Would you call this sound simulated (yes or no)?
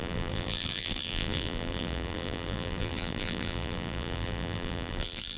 yes